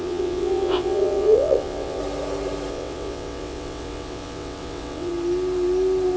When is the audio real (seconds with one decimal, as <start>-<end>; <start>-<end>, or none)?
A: 2.0-2.7; 5.1-6.2